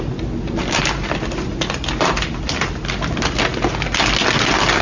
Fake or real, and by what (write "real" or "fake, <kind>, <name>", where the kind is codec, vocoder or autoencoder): real